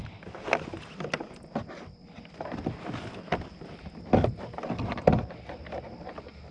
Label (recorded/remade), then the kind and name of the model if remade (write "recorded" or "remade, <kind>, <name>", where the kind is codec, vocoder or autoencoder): recorded